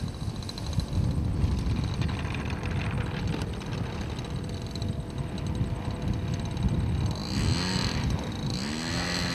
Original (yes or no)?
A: yes